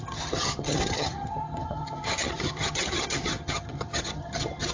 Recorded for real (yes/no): no